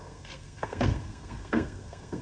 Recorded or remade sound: remade